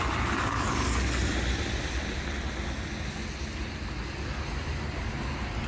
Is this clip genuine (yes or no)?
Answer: yes